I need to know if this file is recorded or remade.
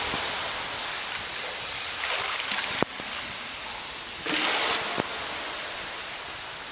recorded